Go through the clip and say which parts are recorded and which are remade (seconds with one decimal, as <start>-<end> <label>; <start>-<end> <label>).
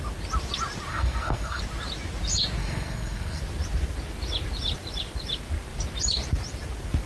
0.0-0.9 recorded; 0.9-1.6 remade; 1.6-2.6 recorded; 2.6-3.4 remade; 3.4-7.1 recorded